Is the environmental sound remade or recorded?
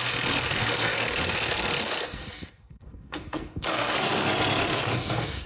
remade